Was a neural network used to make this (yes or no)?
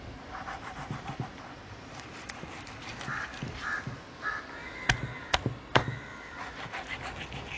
no